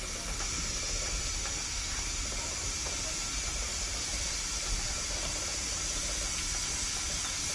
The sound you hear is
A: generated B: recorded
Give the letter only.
B